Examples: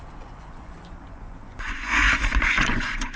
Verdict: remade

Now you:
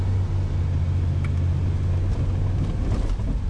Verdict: recorded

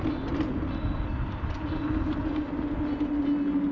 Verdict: recorded